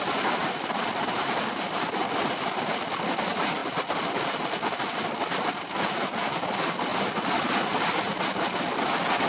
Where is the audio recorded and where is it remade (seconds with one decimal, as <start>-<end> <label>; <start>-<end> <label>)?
0.0-9.3 recorded